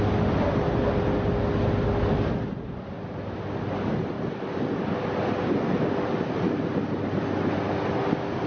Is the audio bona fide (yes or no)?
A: yes